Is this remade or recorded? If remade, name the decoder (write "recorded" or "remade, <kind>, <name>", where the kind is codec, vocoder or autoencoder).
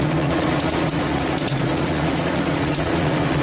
remade, vocoder, Vocos